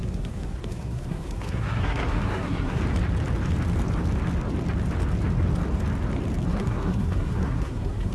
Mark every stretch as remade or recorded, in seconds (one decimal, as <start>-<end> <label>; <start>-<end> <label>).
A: 0.0-2.8 remade; 2.8-6.5 recorded; 6.5-8.1 remade